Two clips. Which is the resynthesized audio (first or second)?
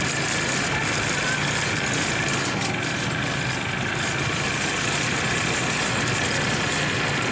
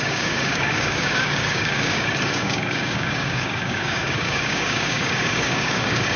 second